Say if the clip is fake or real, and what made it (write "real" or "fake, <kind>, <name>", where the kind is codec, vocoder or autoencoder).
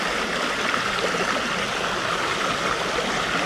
real